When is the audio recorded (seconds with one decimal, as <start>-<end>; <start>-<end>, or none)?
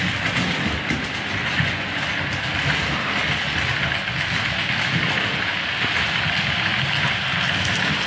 0.0-1.4; 2.1-8.1